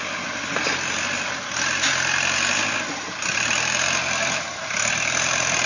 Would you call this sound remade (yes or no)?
no